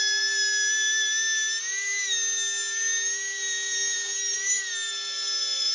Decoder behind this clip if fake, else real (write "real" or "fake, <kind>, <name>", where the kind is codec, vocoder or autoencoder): real